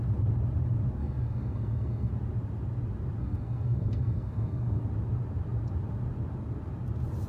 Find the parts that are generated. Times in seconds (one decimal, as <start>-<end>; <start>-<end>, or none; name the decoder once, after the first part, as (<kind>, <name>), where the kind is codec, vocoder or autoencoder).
1.0-2.1 (codec, SNAC); 3.2-4.8